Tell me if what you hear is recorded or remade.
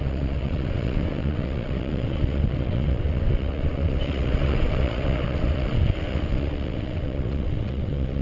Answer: remade